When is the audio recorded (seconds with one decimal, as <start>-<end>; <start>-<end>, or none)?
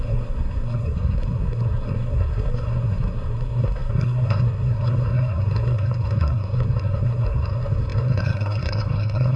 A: none